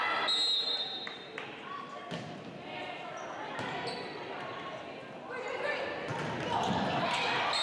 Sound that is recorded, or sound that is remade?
recorded